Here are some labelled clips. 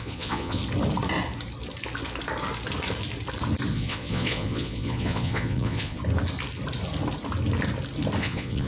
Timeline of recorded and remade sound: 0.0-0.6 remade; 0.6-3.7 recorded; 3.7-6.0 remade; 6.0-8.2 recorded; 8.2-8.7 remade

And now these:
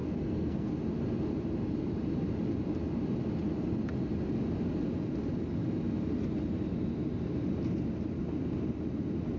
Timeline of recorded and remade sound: 0.0-0.7 remade; 0.7-9.4 recorded